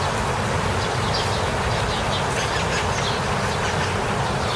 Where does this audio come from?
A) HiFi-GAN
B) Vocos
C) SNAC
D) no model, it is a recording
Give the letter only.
D